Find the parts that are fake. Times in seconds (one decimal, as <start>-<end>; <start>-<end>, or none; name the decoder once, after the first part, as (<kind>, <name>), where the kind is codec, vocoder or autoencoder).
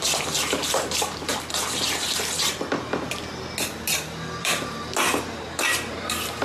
0.0-1.3 (vocoder, BigVGAN v2); 4.4-6.4